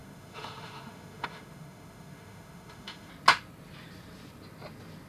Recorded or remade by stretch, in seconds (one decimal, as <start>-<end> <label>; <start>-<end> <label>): 0.0-3.1 remade; 3.1-5.1 recorded